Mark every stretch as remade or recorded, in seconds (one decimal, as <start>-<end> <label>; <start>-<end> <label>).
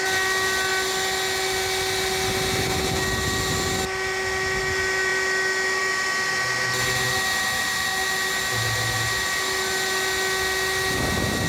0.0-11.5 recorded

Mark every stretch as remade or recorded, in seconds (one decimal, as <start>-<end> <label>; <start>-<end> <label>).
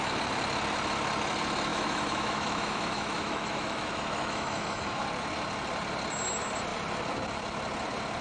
0.0-1.7 recorded; 1.7-5.0 remade; 5.0-8.2 recorded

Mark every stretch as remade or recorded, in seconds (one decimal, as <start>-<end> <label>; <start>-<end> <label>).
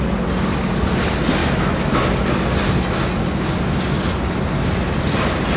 0.0-1.4 recorded; 1.4-2.0 remade; 2.0-5.6 recorded